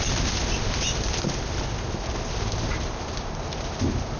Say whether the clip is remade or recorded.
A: recorded